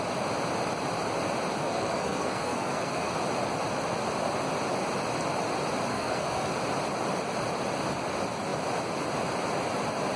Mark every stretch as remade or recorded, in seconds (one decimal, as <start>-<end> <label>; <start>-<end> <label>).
0.0-1.6 recorded; 1.6-3.1 remade; 3.1-5.9 recorded; 5.9-6.5 remade; 6.5-10.2 recorded